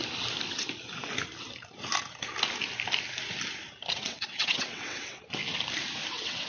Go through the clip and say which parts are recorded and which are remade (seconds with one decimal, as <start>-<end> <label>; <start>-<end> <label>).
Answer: 0.0-3.9 recorded; 3.9-5.4 remade; 5.4-6.1 recorded; 6.1-6.5 remade